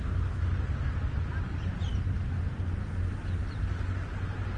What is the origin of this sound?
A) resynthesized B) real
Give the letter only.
B